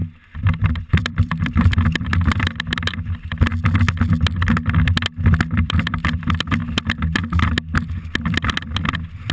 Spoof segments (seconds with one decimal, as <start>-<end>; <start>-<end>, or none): 0.8-3.5; 5.6-6.6